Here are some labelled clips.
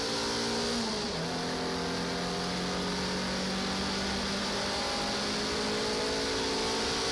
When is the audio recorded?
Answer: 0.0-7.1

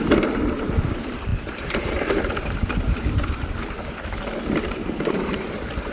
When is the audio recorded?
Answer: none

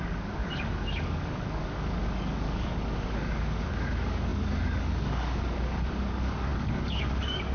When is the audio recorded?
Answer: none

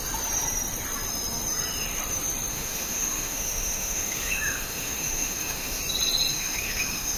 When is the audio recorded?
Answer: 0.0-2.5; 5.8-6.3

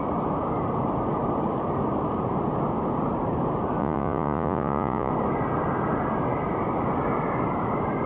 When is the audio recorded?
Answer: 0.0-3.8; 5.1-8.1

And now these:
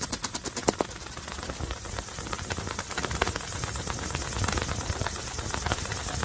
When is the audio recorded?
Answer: 0.0-6.2